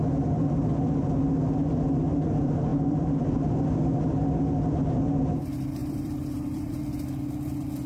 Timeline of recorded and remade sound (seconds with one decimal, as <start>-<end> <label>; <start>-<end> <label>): 0.0-2.7 recorded; 2.7-3.3 remade; 3.3-5.8 recorded; 5.8-6.8 remade; 6.8-7.9 recorded